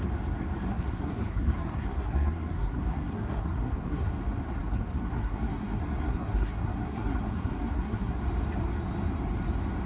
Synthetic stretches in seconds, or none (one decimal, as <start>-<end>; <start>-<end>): 0.7-4.1; 4.6-8.2